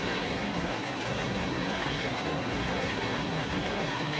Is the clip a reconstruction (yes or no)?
yes